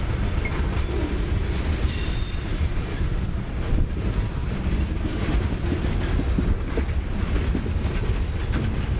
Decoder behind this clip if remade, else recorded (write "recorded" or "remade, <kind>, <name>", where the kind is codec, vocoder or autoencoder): recorded